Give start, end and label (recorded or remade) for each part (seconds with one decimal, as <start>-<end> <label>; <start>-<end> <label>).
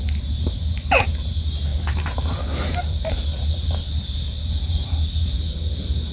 0.0-6.1 remade